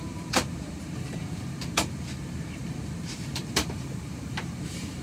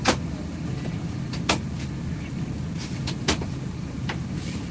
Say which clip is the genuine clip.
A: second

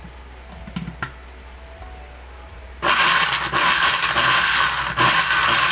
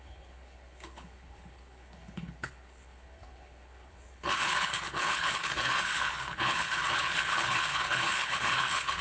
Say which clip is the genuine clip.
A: first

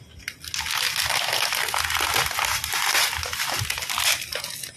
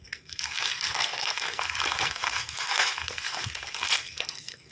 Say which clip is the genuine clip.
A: first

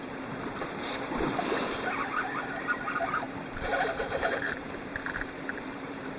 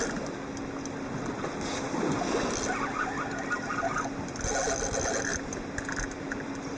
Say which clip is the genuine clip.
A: second